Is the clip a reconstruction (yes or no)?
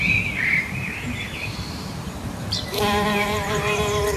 yes